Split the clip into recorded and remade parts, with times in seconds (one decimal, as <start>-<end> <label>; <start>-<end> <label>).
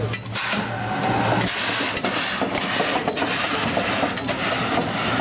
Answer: 0.0-5.2 recorded